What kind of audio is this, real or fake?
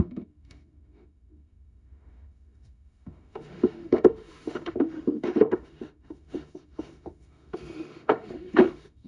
fake